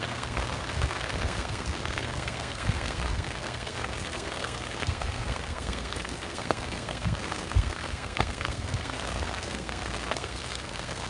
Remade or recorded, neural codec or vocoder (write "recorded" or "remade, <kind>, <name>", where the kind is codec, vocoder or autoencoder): remade, codec, SNAC